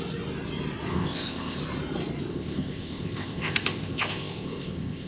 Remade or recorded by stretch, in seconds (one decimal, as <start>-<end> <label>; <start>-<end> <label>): 0.0-0.9 recorded; 0.9-1.6 remade; 1.6-2.3 recorded; 2.3-5.1 remade